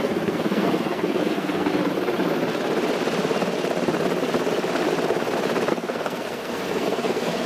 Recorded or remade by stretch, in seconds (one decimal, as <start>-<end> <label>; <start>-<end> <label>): 0.0-1.7 remade; 1.7-5.7 recorded; 5.7-7.5 remade